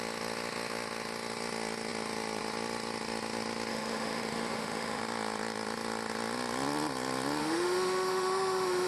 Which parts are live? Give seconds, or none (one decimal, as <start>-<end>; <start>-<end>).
0.0-3.7; 5.0-7.4